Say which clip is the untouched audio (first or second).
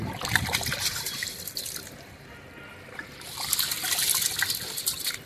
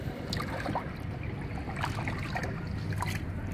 second